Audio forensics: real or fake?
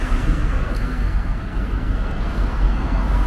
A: fake